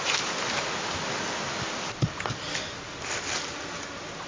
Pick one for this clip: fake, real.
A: real